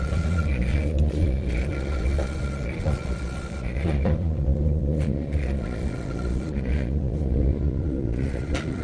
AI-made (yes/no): yes